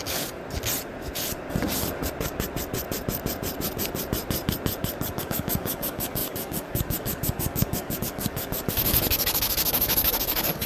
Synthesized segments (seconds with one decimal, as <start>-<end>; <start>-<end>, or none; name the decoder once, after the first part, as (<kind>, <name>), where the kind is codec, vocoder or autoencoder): 0.0-0.4 (codec, DAC); 5.2-10.7